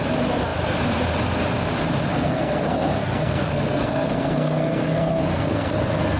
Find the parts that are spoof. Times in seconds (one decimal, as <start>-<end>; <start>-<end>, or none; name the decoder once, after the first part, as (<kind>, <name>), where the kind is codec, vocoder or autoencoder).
2.1-5.8 (codec, SNAC)